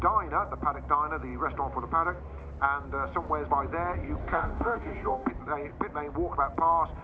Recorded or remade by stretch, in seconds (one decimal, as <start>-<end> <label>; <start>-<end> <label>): 0.0-4.2 recorded; 4.2-5.3 remade; 5.3-7.0 recorded